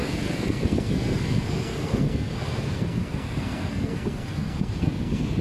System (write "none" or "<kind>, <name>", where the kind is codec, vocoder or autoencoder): codec, SNAC